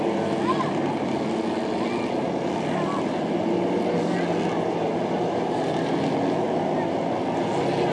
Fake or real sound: real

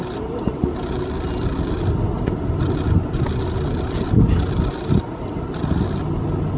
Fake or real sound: real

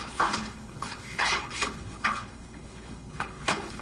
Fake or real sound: fake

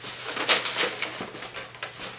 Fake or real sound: real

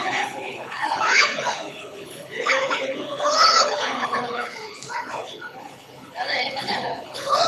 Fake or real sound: fake